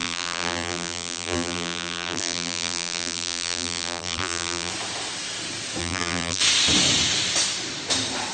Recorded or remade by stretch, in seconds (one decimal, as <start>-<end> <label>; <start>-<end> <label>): 0.0-4.7 remade; 4.7-5.8 recorded; 5.8-6.4 remade; 6.4-8.3 recorded